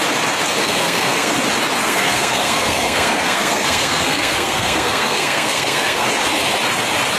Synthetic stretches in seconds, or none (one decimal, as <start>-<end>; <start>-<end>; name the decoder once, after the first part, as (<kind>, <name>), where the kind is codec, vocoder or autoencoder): 0.6-1.3 (codec, SNAC); 1.8-6.1